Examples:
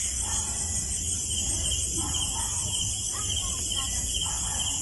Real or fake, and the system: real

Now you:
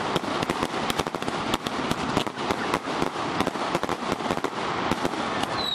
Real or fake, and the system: real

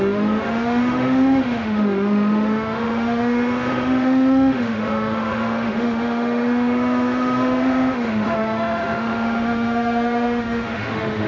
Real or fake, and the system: fake, autoencoder, DAC-VAE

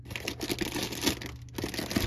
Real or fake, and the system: real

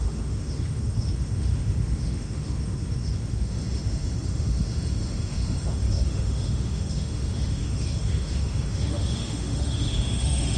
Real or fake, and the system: fake, autoencoder, DAC-VAE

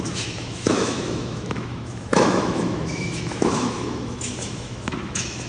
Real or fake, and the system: fake, autoencoder, DAC-VAE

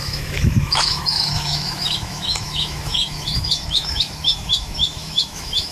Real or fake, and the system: fake, autoencoder, DAC-VAE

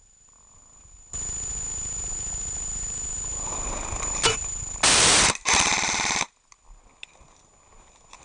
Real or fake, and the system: real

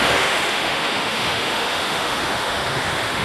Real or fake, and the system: fake, autoencoder, DAC-VAE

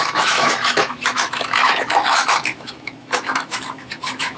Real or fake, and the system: fake, autoencoder, DAC-VAE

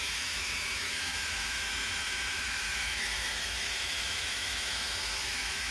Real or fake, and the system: fake, autoencoder, DAC-VAE